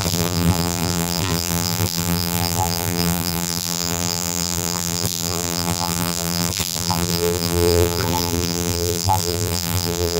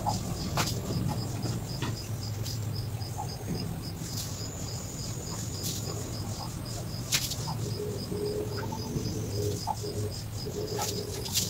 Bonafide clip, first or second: second